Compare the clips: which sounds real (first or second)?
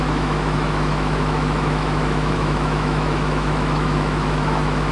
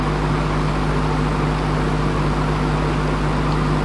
second